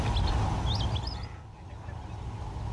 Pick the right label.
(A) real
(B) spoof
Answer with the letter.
A